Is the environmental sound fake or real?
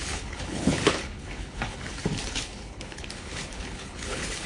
fake